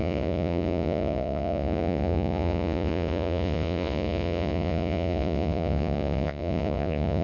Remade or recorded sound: remade